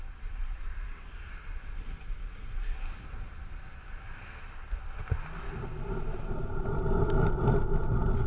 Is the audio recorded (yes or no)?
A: yes